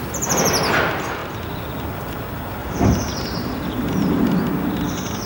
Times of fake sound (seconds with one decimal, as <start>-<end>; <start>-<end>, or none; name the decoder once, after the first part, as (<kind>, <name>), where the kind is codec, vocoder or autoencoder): 2.6-4.4 (vocoder, BigVGAN v2)